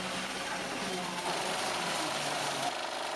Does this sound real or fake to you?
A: real